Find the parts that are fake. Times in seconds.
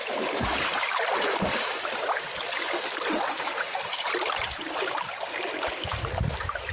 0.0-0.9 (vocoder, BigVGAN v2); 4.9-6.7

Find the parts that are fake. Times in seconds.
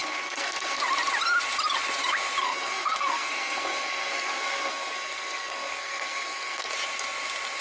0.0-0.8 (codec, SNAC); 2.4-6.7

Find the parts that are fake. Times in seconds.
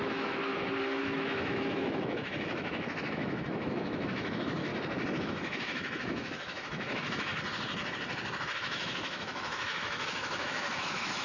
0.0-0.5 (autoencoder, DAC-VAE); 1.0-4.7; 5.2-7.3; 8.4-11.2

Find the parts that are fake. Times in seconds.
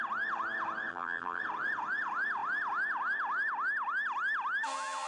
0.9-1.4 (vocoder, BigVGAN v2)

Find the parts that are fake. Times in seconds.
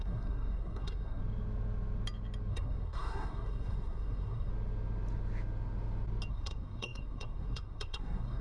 0.0-1.2 (codec, SNAC); 2.5-4.5; 6.3-8.4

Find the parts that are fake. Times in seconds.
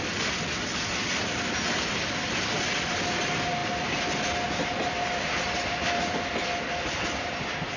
none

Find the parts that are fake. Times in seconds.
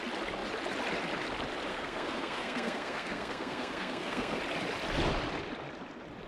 1.7-4.4 (codec, SNAC)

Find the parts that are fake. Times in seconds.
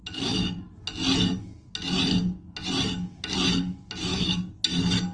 4.1-4.6 (codec, DAC)